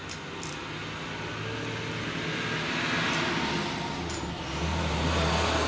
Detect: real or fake real